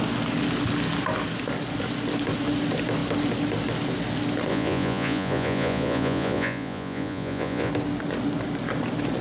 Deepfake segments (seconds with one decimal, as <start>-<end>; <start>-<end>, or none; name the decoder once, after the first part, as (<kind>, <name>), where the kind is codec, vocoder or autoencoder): 4.5-7.7 (vocoder, Vocos)